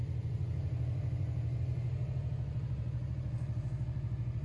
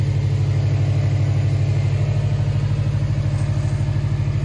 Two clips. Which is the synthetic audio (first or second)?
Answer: first